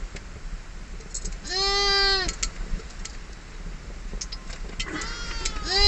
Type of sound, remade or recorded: recorded